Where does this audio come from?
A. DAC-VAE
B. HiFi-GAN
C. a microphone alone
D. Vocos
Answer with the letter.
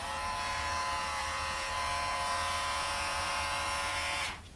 D